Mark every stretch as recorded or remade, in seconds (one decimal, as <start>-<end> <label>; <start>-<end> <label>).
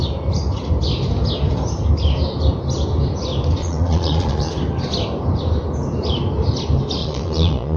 0.0-3.6 recorded; 3.6-4.5 remade; 4.5-7.0 recorded; 7.0-7.8 remade